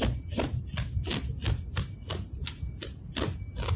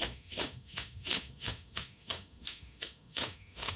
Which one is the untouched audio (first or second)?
first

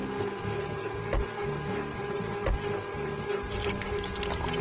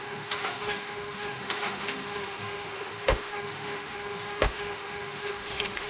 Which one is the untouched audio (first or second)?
first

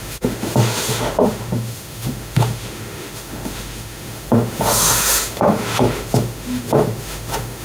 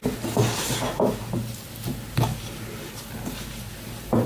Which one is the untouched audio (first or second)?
second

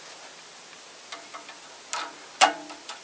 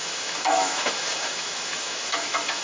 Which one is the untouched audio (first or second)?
first